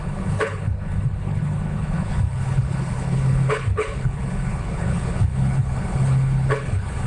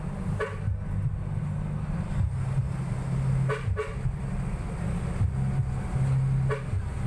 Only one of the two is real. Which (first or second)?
second